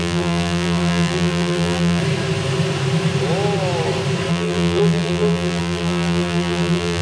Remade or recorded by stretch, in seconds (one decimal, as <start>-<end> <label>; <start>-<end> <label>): 0.0-2.0 remade; 2.0-4.3 recorded; 4.3-7.0 remade